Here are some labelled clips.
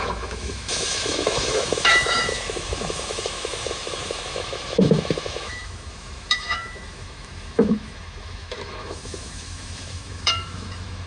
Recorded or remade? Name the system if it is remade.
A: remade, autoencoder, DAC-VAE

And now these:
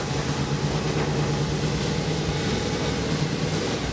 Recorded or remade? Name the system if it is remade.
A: recorded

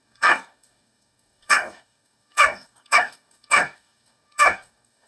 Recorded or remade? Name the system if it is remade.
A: remade, codec, DAC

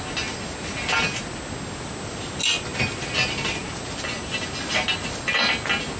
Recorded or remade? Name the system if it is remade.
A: recorded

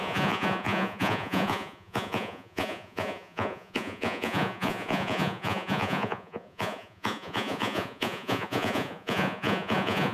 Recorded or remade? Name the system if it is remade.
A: remade, vocoder, Vocos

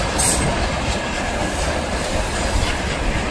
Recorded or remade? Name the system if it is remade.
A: recorded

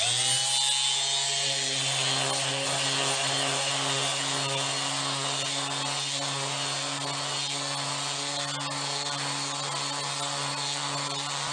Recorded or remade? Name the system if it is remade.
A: recorded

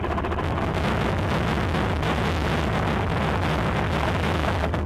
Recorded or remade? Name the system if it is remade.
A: recorded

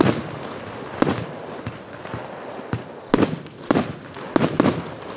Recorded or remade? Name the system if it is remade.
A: recorded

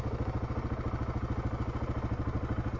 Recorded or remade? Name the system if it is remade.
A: recorded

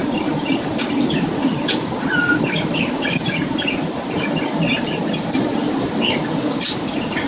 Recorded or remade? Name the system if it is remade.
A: remade, vocoder, BigVGAN v2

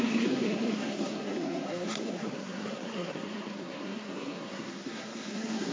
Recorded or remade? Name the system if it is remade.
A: remade, codec, SNAC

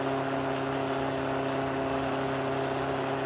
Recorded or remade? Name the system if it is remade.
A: recorded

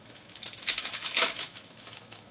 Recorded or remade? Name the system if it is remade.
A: remade, autoencoder, DAC-VAE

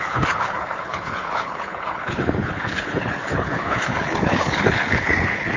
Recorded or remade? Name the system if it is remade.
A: remade, codec, HILCodec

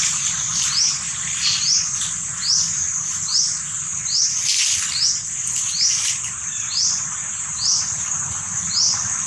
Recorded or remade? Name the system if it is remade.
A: recorded